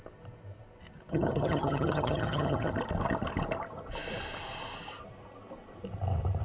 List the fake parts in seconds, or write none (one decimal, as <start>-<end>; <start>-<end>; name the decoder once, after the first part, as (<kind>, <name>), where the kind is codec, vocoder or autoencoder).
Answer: 1.1-2.7 (vocoder, HiFi-GAN)